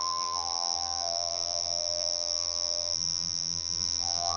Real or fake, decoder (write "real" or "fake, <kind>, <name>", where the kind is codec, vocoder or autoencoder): fake, vocoder, BigVGAN v2